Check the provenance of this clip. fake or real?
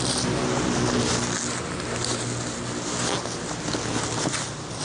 real